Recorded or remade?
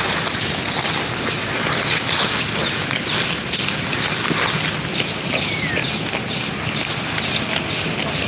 recorded